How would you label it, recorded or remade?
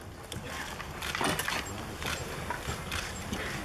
recorded